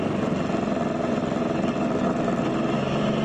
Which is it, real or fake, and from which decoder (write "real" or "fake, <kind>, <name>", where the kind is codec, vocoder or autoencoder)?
real